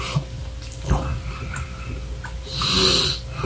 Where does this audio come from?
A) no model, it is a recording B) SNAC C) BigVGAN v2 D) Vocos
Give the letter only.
A